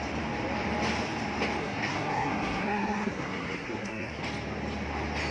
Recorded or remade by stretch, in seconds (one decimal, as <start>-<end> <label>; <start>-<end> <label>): 0.0-1.6 recorded; 1.6-4.2 remade; 4.2-5.3 recorded